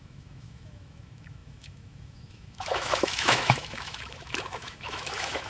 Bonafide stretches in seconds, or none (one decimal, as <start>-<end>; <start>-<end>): none